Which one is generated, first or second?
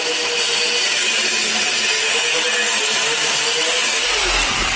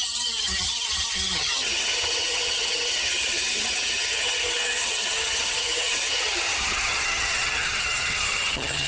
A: second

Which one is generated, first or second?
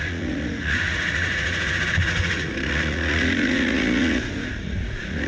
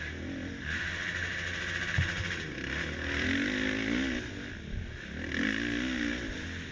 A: first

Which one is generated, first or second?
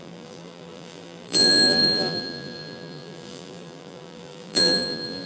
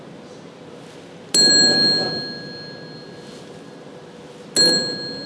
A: first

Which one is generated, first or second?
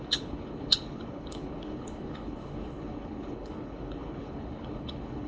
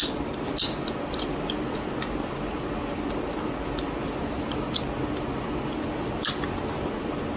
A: first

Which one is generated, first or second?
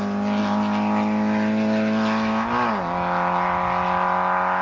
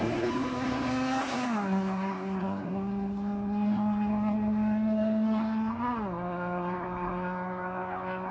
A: second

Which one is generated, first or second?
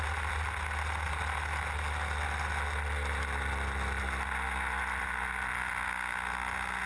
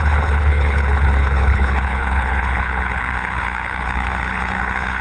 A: second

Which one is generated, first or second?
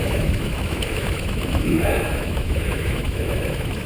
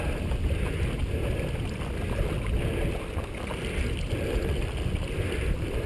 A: first